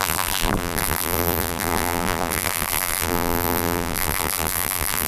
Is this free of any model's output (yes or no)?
no